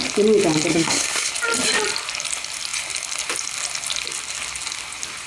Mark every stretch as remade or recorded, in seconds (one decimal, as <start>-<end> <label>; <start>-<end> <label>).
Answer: 0.0-0.7 recorded; 0.7-1.3 remade; 1.3-5.3 recorded